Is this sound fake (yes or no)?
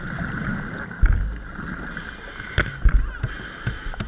no